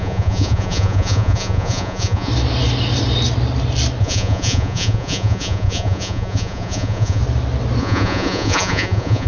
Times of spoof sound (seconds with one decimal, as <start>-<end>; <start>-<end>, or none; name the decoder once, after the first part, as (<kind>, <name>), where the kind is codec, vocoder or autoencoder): 0.0-2.3 (vocoder, Vocos); 4.0-7.2; 7.8-9.3